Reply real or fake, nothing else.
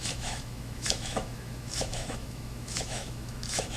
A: fake